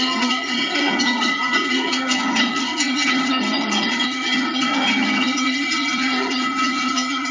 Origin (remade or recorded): remade